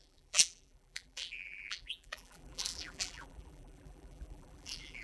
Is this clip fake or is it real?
fake